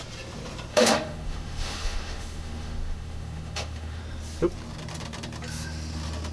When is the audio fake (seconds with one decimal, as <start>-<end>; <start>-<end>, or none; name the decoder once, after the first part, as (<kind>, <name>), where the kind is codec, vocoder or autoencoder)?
0.7-4.0 (autoencoder, DAC-VAE)